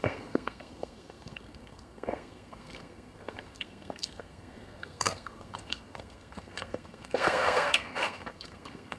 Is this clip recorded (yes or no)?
no